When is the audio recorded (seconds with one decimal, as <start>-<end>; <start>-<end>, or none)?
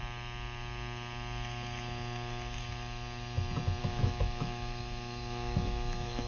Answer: 0.0-3.8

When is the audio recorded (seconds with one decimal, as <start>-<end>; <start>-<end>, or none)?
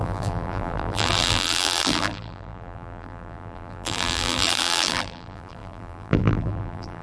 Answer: none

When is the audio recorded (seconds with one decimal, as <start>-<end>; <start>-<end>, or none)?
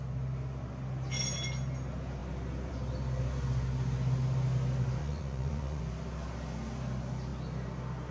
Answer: 0.0-5.0; 5.8-8.1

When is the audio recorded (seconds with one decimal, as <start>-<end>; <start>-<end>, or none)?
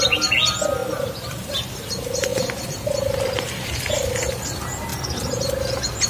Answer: 0.0-0.8; 1.8-2.3; 3.9-6.1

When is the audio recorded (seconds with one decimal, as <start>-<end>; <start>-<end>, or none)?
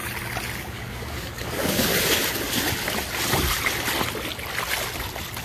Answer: 0.0-0.6; 1.9-5.4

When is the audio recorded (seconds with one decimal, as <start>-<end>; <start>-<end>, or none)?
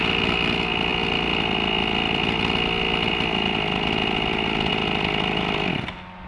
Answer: 0.0-6.3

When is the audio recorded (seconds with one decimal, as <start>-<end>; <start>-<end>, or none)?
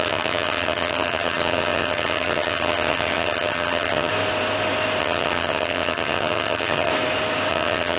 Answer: 4.1-5.0; 6.9-7.5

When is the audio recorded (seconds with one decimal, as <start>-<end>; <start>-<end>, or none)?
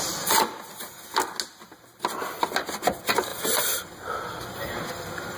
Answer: 0.0-5.4